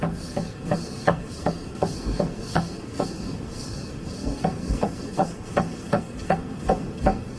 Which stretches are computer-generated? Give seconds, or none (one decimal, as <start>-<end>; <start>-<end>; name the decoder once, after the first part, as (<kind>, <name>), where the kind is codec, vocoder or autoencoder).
0.0-7.4 (codec, SNAC)